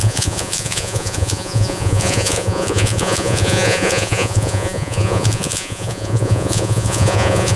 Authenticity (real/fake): fake